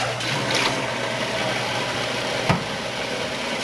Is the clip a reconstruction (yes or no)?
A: no